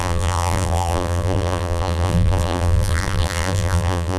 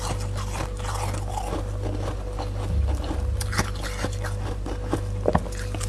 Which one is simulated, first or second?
first